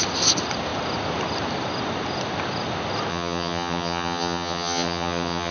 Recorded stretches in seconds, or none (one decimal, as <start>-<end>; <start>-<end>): 0.0-3.1